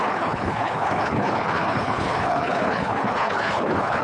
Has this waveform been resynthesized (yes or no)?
yes